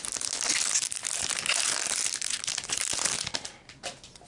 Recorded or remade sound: recorded